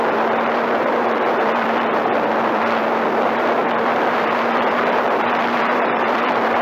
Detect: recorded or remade remade